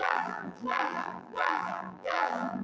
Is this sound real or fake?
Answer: fake